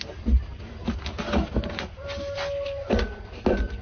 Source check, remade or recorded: recorded